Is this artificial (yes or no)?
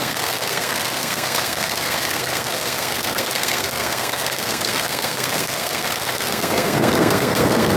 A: yes